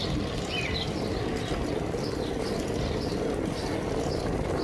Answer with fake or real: real